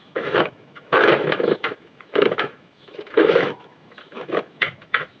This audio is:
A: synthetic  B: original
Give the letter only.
A